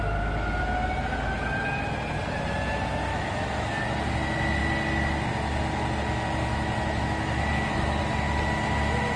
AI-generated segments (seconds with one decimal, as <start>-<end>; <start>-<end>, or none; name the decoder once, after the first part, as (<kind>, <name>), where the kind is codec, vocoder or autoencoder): 3.1-3.7 (autoencoder, DAC-VAE); 6.5-8.0